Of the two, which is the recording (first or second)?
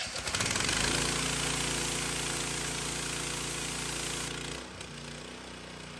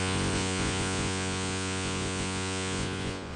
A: first